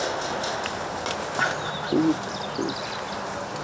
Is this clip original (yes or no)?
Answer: yes